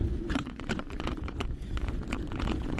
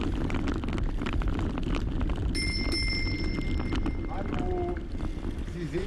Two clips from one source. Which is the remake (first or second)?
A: first